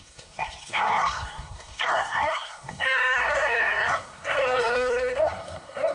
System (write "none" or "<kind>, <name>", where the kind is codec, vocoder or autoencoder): codec, SNAC